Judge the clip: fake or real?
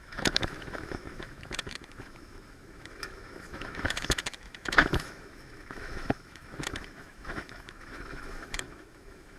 fake